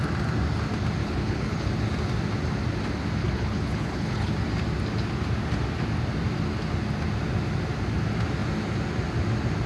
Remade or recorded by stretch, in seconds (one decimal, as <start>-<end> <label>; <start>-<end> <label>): 0.0-1.0 recorded; 1.0-1.7 remade; 1.7-3.2 recorded; 3.2-4.3 remade; 4.3-9.7 recorded